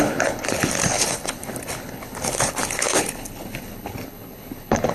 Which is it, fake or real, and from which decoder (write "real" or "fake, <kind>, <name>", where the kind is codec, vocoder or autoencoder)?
fake, codec, HILCodec